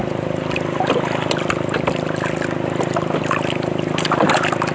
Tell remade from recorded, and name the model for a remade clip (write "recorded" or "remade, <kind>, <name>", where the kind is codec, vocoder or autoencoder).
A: recorded